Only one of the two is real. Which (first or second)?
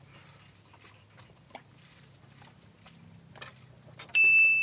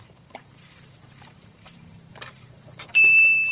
first